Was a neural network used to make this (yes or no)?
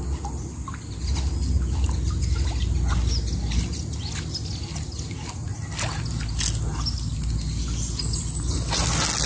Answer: no